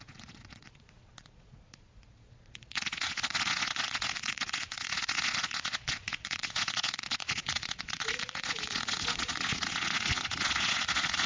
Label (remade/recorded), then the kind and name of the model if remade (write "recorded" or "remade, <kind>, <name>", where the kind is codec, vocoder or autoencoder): remade, vocoder, Vocos